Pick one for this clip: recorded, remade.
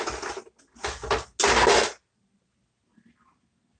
recorded